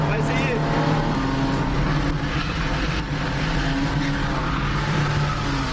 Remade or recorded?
recorded